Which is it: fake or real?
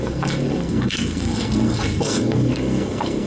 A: fake